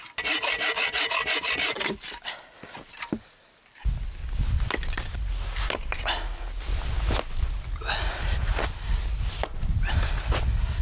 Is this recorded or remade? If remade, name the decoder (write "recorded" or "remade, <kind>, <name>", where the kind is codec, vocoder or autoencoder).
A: recorded